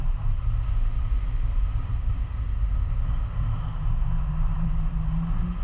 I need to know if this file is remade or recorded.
recorded